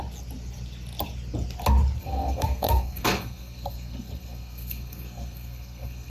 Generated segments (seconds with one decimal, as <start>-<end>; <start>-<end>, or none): 2.0-6.1